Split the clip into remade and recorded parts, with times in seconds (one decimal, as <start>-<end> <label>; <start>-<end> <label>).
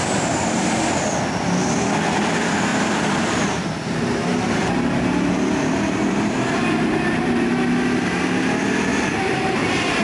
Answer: 0.0-0.9 remade; 0.9-2.7 recorded; 2.7-7.5 remade; 7.5-8.9 recorded; 8.9-10.0 remade